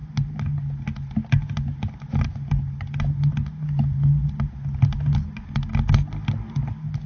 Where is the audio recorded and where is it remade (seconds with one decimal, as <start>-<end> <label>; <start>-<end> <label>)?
0.0-7.1 recorded